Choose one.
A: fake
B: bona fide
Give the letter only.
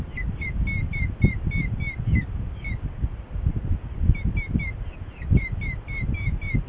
B